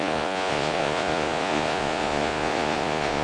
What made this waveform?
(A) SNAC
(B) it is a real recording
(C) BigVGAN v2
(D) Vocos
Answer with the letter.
D